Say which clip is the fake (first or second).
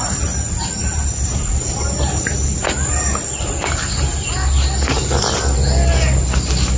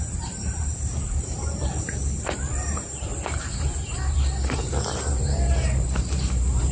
second